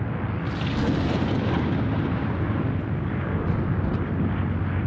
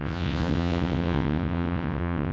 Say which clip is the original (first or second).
first